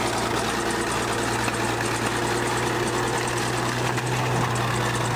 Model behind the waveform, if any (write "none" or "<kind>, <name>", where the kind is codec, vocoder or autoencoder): none